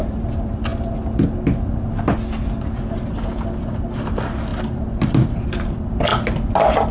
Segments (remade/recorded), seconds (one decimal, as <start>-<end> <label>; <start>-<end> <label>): 0.0-0.7 remade; 0.7-3.6 recorded; 3.6-6.1 remade; 6.1-6.9 recorded